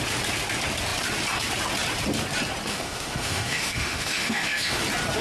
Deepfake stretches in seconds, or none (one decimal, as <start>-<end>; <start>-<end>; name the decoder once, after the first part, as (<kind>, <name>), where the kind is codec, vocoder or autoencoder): 2.7-4.8 (autoencoder, DAC-VAE)